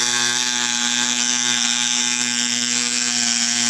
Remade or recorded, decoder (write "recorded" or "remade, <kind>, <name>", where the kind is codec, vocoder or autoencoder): remade, codec, SNAC